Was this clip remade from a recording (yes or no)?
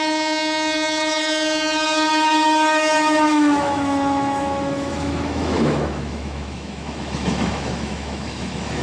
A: yes